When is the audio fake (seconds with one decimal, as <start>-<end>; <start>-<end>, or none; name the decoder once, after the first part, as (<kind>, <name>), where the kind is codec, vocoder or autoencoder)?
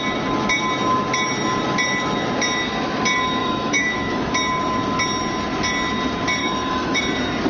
3.4-4.3 (autoencoder, DAC-VAE); 6.4-7.0